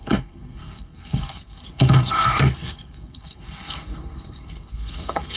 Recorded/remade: remade